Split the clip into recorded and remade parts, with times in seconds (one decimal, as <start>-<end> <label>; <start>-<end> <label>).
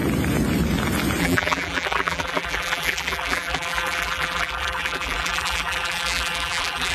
0.0-1.2 recorded; 1.2-6.9 remade